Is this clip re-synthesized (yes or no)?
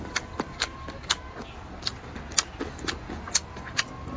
no